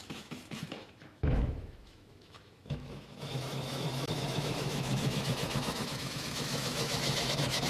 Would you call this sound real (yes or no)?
no